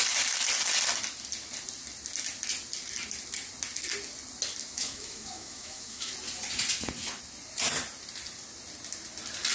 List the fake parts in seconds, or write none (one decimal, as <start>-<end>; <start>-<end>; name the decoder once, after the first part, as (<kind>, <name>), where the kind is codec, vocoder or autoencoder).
4.6-6.1 (autoencoder, DAC-VAE)